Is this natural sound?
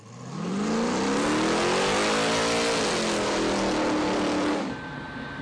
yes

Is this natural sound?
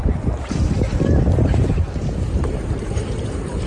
no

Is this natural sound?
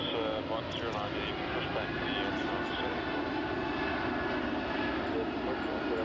yes